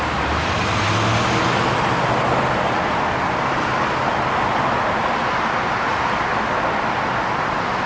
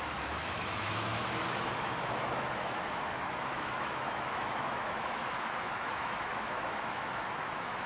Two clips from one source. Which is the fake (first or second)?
second